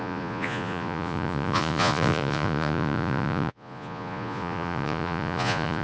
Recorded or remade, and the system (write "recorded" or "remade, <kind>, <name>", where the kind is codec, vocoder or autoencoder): remade, vocoder, Vocos